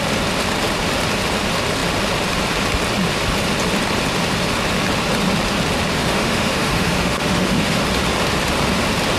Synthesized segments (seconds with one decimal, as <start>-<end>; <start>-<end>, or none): 6.0-7.8